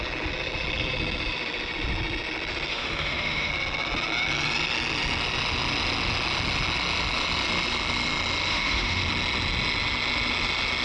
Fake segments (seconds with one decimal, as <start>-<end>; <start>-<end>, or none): 2.7-3.5; 8.5-9.0